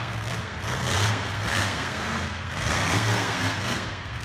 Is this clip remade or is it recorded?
remade